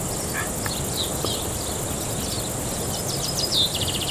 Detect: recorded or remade recorded